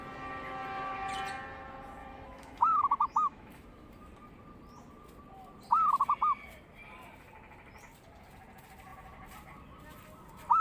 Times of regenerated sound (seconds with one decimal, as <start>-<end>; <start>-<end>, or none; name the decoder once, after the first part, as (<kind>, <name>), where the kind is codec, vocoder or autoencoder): 2.0-4.0 (autoencoder, DAC-VAE)